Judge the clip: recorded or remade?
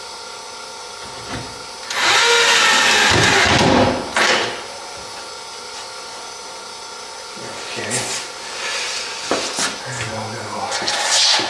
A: recorded